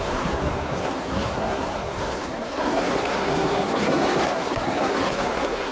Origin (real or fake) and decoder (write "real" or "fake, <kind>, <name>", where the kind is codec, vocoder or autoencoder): fake, codec, SNAC